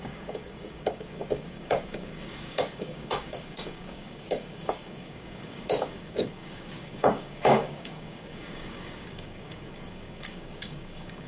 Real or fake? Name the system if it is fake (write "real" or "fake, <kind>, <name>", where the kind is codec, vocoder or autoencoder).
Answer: fake, codec, DAC